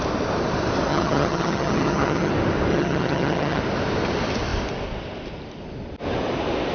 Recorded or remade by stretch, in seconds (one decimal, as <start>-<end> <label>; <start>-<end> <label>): 0.0-0.9 recorded; 0.9-2.3 remade; 2.3-2.7 recorded; 2.7-3.6 remade; 3.6-6.7 recorded